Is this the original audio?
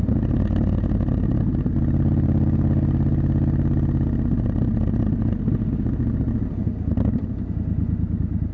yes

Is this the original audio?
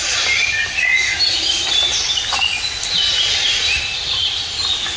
yes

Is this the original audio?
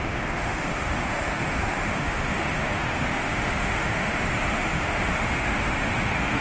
no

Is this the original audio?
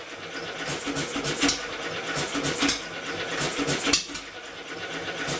yes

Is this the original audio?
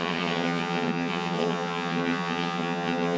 no